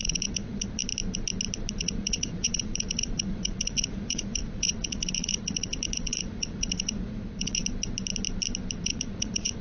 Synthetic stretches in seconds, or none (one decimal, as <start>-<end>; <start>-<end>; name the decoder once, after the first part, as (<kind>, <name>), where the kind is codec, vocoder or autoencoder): 0.0-0.8 (vocoder, Vocos); 1.7-7.6; 8.8-9.6